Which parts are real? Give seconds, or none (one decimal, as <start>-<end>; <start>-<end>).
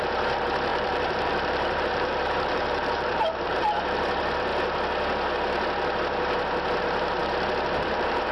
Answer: 4.5-6.8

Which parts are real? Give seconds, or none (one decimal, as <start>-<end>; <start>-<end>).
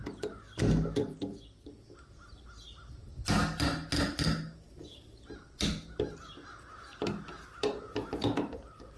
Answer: 0.0-1.0; 2.1-9.0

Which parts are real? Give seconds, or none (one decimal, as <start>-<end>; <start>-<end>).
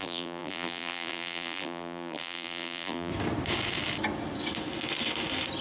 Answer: 3.1-5.6